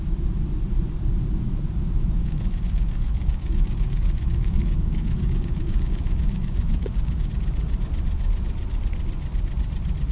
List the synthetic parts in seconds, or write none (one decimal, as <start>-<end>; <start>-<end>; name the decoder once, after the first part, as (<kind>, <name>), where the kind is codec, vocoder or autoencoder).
2.2-7.3 (codec, DAC)